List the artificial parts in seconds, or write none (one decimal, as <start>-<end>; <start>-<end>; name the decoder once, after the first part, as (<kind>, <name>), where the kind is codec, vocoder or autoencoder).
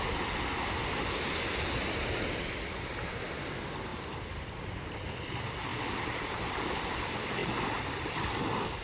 3.9-4.4 (vocoder, BigVGAN v2); 5.7-6.7; 7.4-8.4